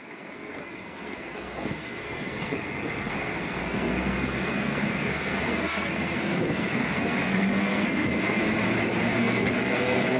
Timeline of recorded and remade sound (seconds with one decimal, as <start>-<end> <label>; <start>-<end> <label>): 0.0-8.4 remade; 8.4-9.2 recorded; 9.2-10.2 remade